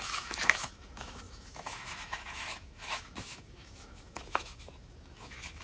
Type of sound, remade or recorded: remade